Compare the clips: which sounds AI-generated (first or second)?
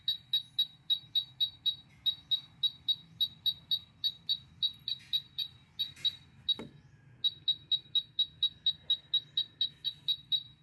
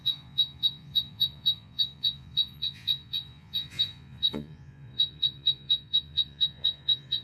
second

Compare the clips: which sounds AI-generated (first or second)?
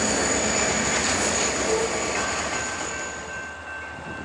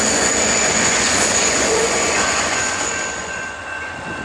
second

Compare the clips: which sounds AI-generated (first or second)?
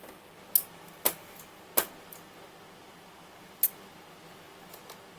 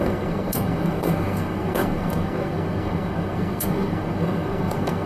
second